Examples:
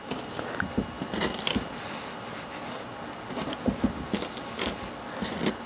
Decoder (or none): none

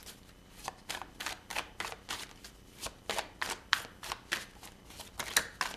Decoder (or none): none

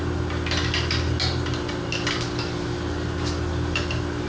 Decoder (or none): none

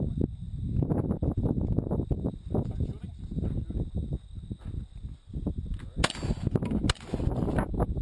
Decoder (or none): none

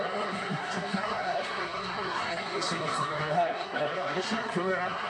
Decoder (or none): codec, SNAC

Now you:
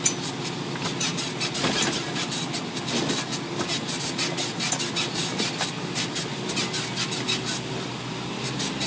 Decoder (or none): none